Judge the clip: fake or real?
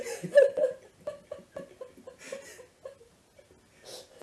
real